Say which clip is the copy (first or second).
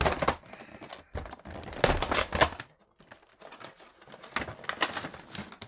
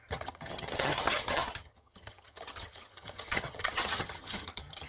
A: second